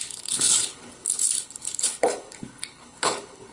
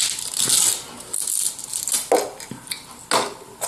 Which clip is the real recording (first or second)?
second